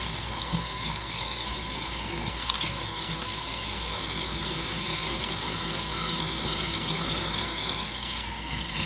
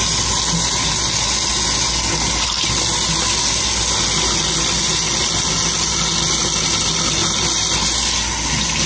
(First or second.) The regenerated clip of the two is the first